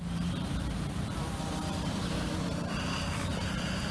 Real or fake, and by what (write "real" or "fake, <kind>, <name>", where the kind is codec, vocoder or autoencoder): fake, vocoder, BigVGAN v2